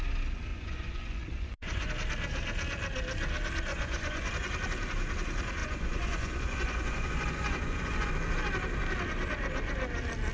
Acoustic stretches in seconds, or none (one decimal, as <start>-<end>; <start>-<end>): 0.0-0.5; 1.9-3.7; 4.3-5.6; 8.1-10.3